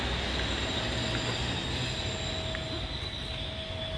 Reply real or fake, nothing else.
real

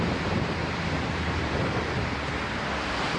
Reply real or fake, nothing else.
fake